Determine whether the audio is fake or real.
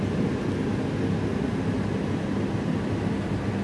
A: real